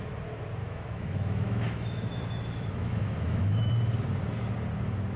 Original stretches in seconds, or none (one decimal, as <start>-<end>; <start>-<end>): 0.0-0.6; 3.7-5.2